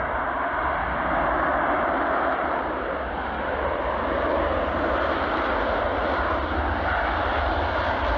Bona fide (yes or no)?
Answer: yes